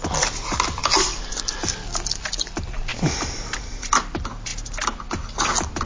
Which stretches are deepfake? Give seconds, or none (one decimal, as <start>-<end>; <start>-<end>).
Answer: 0.8-1.7; 2.9-4.0